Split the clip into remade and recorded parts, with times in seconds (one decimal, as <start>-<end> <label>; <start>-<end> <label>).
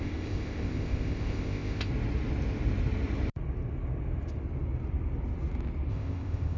0.0-1.9 remade; 1.9-5.9 recorded; 5.9-6.6 remade